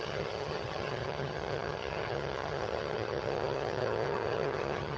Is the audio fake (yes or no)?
yes